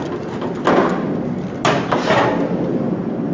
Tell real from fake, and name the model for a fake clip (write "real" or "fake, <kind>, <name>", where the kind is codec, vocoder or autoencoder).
real